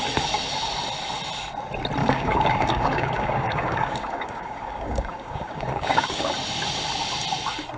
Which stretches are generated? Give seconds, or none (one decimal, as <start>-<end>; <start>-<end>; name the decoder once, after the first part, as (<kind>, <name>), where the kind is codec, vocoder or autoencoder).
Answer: 2.0-6.3 (codec, DAC)